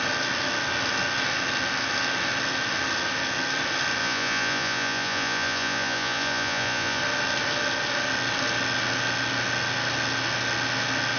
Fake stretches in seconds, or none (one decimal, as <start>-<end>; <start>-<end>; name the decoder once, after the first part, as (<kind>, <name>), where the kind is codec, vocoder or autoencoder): 4.0-7.0 (vocoder, Vocos)